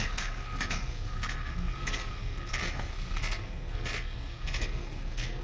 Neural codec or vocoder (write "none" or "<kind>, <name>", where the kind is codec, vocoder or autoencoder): codec, SNAC